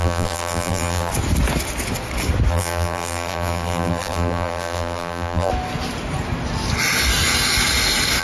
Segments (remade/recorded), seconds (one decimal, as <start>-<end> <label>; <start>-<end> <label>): 0.0-1.1 remade; 1.1-2.5 recorded; 2.5-5.5 remade; 5.5-8.2 recorded